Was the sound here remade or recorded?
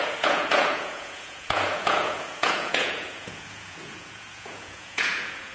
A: remade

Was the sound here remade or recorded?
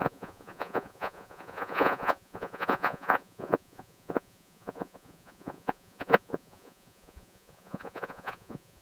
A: remade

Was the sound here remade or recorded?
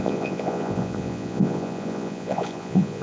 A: remade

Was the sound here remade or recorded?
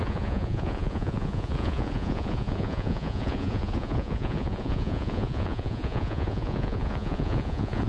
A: remade